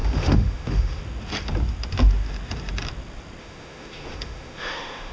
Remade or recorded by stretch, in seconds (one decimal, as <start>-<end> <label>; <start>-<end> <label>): 0.0-1.0 remade; 1.0-3.4 recorded; 3.4-5.1 remade